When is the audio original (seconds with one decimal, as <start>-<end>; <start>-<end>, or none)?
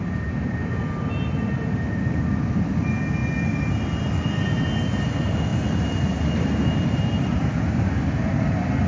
0.0-8.9